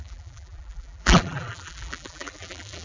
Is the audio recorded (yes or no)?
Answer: no